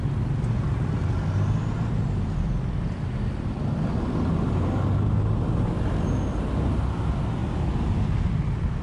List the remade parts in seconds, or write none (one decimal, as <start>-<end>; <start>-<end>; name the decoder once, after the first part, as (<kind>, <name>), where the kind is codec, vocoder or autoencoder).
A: none